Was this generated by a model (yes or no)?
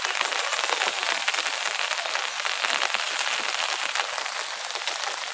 no